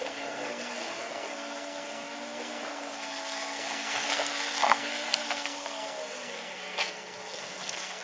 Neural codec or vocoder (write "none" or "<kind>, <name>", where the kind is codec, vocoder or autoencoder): codec, SNAC